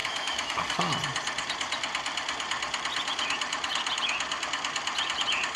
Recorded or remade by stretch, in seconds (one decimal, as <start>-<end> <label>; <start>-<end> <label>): 0.0-0.6 remade; 0.6-5.6 recorded